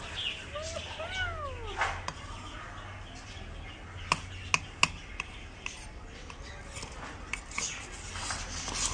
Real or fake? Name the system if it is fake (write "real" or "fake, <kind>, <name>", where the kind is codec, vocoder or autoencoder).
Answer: real